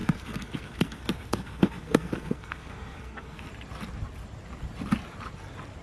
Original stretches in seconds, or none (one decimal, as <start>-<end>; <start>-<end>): 3.5-5.8